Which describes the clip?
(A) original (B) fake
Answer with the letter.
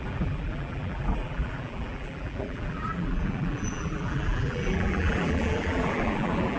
B